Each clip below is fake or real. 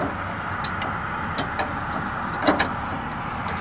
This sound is real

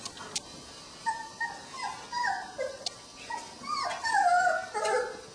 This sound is real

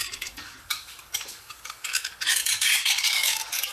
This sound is fake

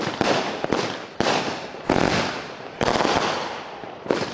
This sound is fake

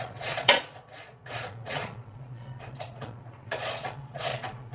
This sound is fake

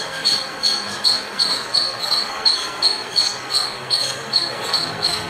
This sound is fake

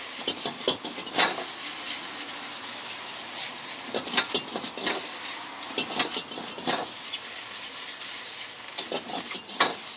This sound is real